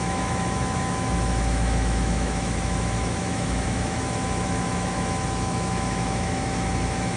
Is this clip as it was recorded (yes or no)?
no